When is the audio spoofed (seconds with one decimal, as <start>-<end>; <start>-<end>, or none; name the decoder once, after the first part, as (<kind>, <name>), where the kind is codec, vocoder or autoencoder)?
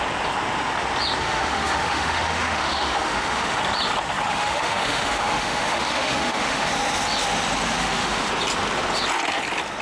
1.2-3.6 (autoencoder, DAC-VAE); 4.3-6.7; 7.8-8.3